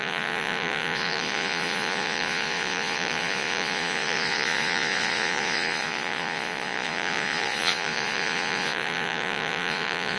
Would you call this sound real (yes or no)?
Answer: no